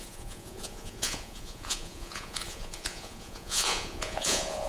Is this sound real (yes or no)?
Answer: no